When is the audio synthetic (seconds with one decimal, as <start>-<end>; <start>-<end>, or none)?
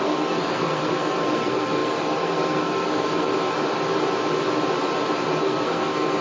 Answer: 0.0-3.3; 5.4-6.2